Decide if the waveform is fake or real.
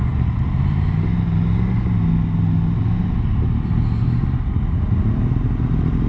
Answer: real